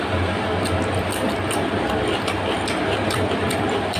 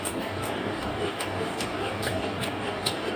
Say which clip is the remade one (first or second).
second